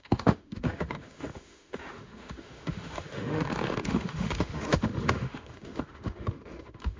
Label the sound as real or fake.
fake